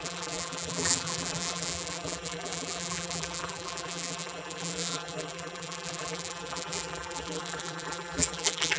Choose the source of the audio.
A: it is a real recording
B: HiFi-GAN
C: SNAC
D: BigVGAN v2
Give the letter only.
D